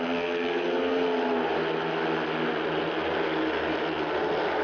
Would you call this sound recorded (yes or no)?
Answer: yes